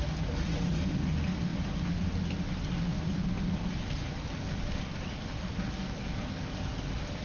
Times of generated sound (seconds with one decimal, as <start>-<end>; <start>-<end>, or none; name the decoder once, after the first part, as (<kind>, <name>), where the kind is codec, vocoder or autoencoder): none